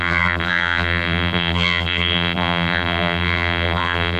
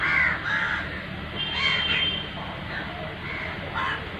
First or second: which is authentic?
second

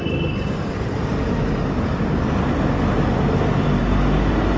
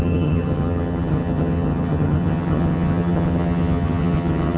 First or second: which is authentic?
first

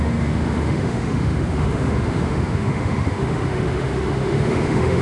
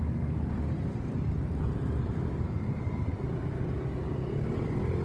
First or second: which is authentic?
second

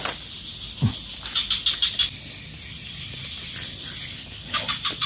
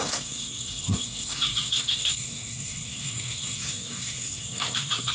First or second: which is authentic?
first